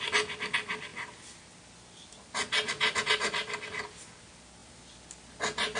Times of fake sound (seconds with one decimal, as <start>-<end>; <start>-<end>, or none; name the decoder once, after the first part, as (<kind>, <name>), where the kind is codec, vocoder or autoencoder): none